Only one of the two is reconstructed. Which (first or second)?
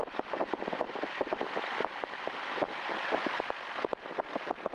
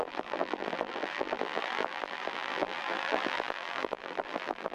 second